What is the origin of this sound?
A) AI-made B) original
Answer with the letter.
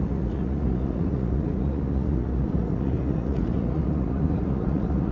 A